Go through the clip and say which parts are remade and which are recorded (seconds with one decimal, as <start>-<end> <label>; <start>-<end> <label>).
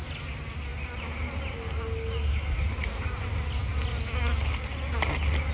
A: 0.0-5.5 recorded